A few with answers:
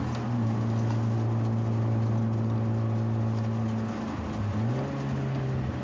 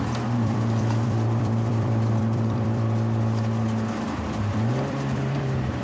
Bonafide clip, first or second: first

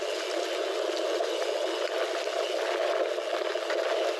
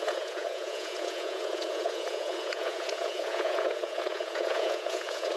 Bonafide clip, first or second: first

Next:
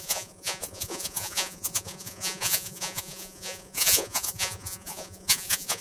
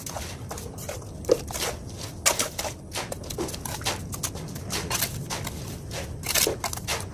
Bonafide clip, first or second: second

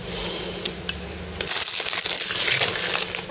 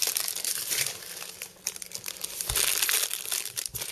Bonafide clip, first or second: first